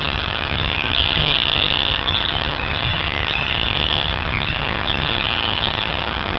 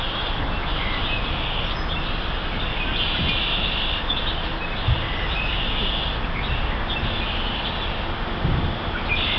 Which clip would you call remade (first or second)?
first